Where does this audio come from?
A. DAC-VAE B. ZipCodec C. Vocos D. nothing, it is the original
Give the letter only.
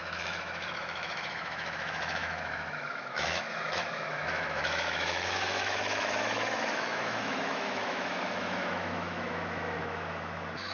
A